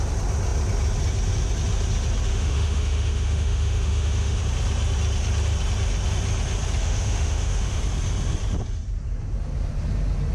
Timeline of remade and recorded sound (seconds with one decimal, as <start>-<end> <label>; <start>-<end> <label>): 0.0-2.3 recorded; 2.3-4.4 remade; 4.4-6.8 recorded; 6.8-7.8 remade; 7.8-10.3 recorded